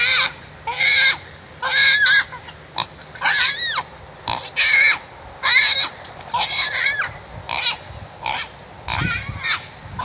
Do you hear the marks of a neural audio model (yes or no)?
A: no